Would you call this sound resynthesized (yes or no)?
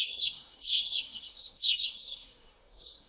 yes